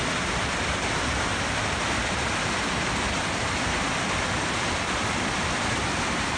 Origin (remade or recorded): recorded